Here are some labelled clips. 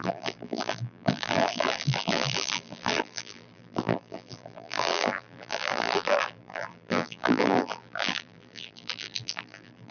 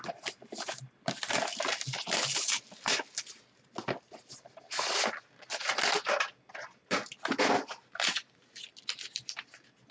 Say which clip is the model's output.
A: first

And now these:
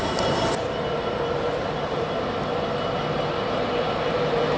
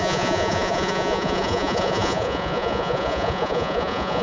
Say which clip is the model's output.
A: second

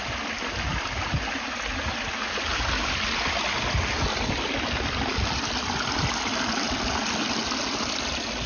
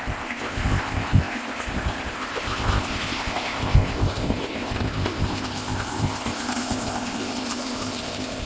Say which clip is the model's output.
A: second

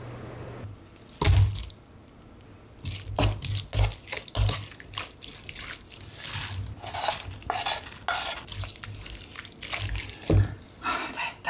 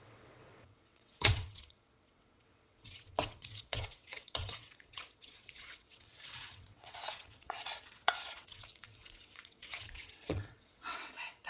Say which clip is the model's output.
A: second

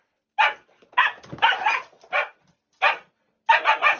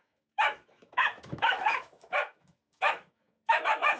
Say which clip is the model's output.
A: second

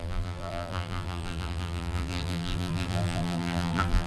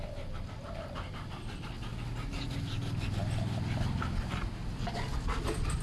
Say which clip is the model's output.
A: first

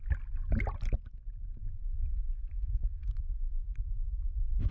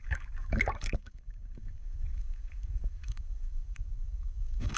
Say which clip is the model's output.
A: second